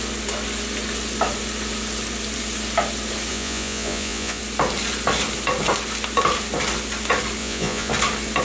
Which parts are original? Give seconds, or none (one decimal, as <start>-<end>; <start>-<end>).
0.0-3.3; 4.4-7.4; 7.9-8.4